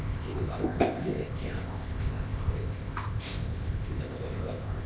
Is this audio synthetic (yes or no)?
yes